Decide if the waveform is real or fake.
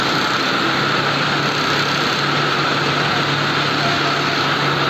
real